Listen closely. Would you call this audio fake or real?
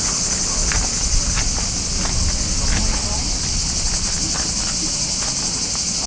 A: real